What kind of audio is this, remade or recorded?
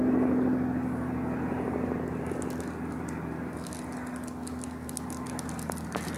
recorded